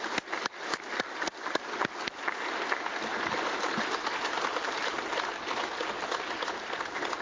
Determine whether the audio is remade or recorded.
recorded